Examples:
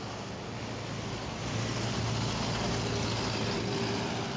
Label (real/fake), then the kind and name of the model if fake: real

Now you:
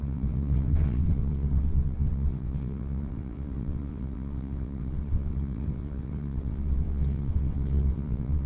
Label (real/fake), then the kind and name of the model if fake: fake, vocoder, WaveNeXt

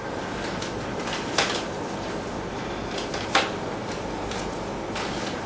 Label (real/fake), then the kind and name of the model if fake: real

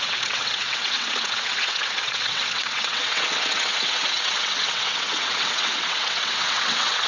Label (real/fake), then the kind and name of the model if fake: fake, vocoder, WaveNeXt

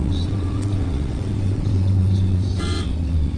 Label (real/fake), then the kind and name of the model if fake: fake, vocoder, WaveNeXt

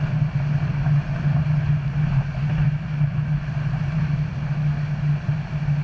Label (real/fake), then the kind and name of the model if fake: real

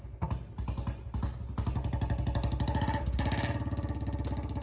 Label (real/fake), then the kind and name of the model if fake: real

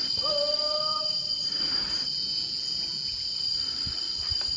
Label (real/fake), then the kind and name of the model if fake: real